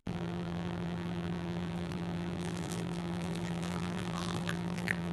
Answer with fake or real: fake